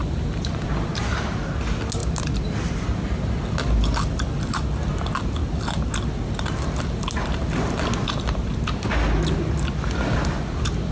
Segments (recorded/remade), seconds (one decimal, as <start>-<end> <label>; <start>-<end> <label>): 0.0-0.6 remade; 0.6-10.9 recorded